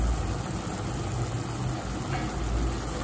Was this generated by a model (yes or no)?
no